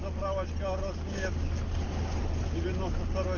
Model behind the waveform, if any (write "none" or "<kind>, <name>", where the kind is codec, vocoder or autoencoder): none